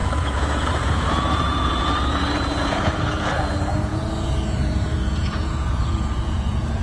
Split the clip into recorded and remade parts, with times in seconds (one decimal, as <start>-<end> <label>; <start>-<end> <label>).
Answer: 0.0-6.8 remade